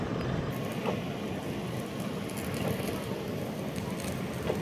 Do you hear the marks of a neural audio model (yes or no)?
no